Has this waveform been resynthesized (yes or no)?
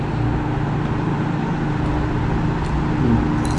no